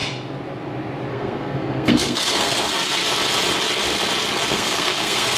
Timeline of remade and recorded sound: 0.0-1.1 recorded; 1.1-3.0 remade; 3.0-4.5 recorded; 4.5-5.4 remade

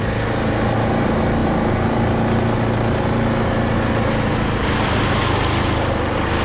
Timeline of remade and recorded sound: 0.0-6.4 recorded

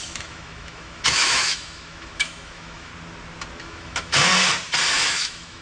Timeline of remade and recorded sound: 0.0-2.9 remade; 2.9-3.6 recorded; 3.6-4.3 remade; 4.3-4.9 recorded; 4.9-5.6 remade

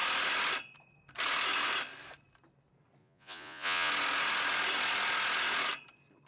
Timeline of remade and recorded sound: 0.0-3.0 recorded; 3.0-3.9 remade; 3.9-6.3 recorded

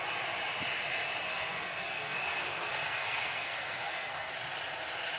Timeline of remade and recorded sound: 0.0-1.2 recorded; 1.2-4.3 remade; 4.3-5.2 recorded

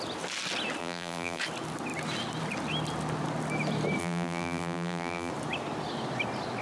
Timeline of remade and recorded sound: 0.0-0.8 recorded; 0.8-1.4 remade; 1.4-4.0 recorded; 4.0-5.3 remade; 5.3-6.6 recorded

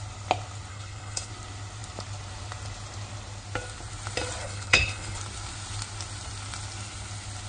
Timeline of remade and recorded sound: 0.0-0.7 recorded; 0.7-1.3 remade; 1.3-4.4 recorded; 4.4-5.2 remade; 5.2-7.5 recorded

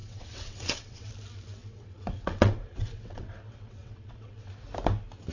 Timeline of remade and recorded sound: 0.0-1.1 remade; 1.1-1.6 recorded; 1.6-4.5 remade; 4.5-5.3 recorded